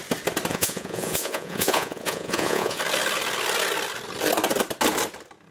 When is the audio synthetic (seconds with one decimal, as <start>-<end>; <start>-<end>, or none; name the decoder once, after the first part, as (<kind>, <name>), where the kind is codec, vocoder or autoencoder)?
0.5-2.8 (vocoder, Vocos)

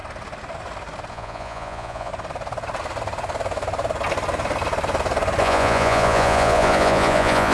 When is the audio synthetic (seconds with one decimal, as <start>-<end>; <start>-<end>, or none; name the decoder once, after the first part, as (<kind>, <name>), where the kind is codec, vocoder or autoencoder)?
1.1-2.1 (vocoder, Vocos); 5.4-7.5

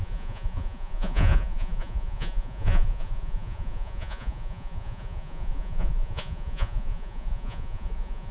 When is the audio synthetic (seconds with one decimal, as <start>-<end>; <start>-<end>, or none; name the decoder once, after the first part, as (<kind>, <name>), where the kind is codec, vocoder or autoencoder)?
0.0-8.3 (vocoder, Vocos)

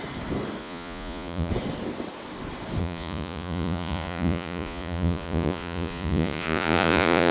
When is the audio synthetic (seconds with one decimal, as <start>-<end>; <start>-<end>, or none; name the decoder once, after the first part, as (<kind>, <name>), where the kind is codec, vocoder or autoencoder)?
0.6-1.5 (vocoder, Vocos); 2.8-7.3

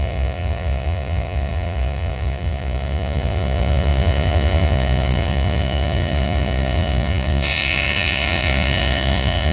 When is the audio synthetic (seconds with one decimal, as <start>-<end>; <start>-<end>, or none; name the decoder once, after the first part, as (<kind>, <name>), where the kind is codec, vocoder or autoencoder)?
0.0-9.5 (vocoder, Vocos)